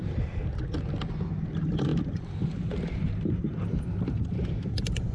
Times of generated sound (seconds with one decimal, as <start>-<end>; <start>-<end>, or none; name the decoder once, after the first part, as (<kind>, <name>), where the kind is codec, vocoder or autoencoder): 1.9-5.1 (vocoder, BigVGAN v2)